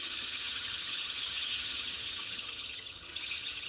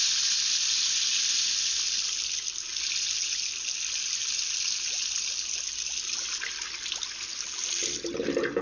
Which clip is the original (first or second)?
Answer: second